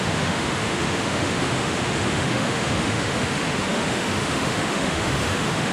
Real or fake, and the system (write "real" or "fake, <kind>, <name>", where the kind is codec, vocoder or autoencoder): fake, autoencoder, DAC-VAE